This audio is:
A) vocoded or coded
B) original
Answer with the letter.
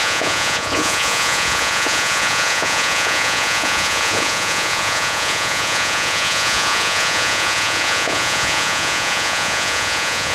A